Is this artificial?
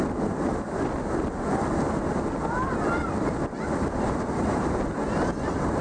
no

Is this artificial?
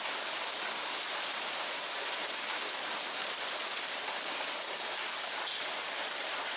no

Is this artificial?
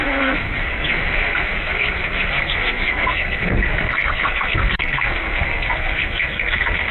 yes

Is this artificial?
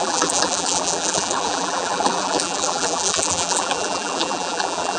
yes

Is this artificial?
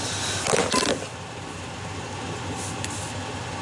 no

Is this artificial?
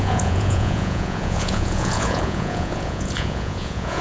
yes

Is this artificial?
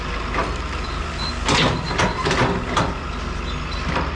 no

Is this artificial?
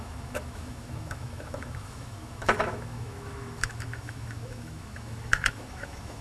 yes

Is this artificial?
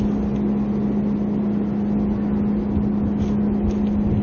no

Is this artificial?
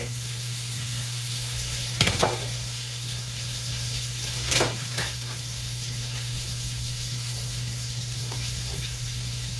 yes